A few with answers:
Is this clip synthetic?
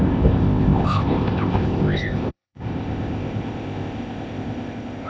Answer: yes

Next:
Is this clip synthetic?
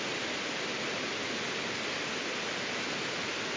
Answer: no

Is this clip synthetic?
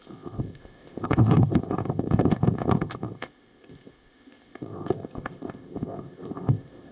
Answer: yes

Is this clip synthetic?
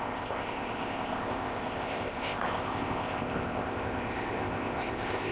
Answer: yes